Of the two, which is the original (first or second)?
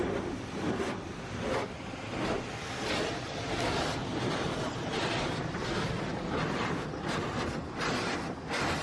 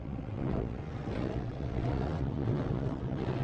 first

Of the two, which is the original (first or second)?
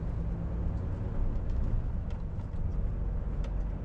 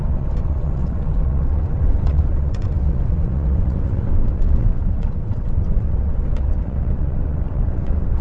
first